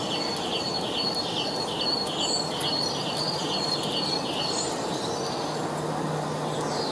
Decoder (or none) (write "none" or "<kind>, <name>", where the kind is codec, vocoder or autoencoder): none